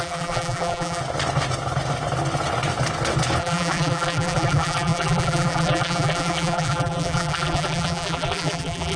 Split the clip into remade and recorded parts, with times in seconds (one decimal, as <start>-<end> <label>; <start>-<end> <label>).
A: 0.0-1.0 remade; 1.0-3.4 recorded; 3.4-9.0 remade